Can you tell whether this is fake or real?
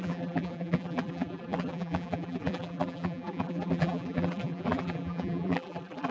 fake